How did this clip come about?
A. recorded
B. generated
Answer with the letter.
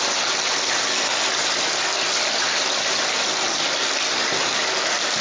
A